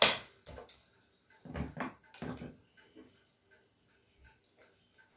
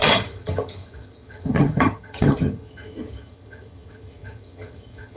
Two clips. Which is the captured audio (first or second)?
first